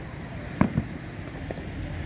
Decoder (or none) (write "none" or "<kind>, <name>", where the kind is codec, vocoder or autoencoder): none